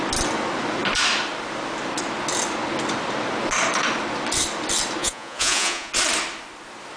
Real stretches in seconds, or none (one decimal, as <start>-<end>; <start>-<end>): 0.0-5.0; 5.9-7.0